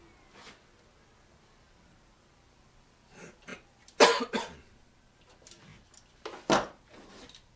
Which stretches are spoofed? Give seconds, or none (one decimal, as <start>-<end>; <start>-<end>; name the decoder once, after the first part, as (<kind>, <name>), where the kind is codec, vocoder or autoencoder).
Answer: none